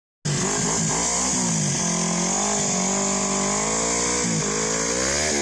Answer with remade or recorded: recorded